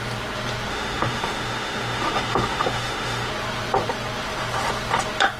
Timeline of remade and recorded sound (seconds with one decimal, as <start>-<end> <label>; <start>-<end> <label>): 0.0-0.7 recorded; 0.7-3.3 remade; 3.3-5.4 recorded